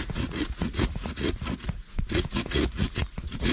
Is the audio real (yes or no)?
no